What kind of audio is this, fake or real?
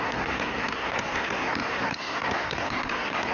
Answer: fake